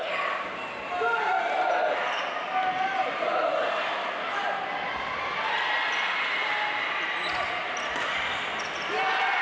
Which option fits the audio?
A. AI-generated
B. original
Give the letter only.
B